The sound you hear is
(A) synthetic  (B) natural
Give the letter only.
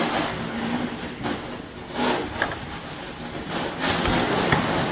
B